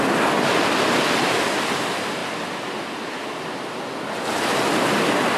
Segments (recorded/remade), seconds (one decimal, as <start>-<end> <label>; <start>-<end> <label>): 0.0-5.4 recorded